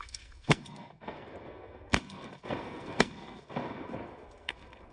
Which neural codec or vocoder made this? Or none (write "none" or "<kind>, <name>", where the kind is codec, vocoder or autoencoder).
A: codec, SNAC